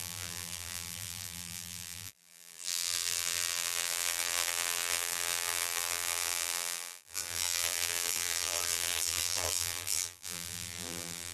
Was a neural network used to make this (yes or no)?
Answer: yes